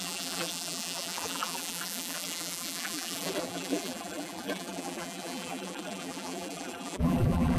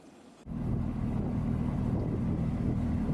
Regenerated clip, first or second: first